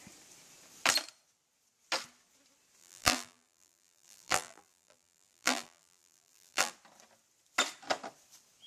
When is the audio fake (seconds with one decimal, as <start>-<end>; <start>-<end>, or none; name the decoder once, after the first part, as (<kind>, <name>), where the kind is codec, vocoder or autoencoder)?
2.8-6.7 (vocoder, BigVGAN v2)